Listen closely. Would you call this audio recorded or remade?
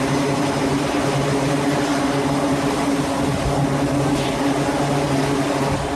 recorded